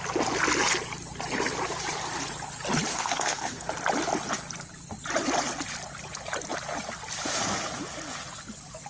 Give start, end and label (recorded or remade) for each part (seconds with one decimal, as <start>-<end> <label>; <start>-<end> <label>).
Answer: 0.0-2.9 recorded; 2.9-3.7 remade; 3.7-8.9 recorded